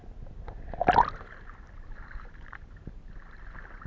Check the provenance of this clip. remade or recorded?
recorded